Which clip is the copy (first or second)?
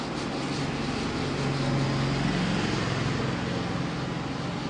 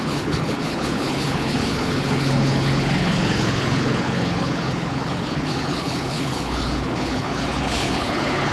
second